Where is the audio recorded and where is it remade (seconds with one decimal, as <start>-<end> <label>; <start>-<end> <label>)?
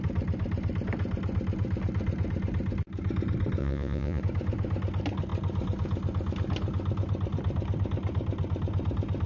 0.0-3.6 recorded; 3.6-4.2 remade; 4.2-9.3 recorded